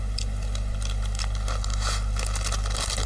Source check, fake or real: real